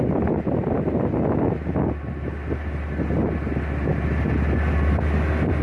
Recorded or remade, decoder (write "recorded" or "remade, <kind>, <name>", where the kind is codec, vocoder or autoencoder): recorded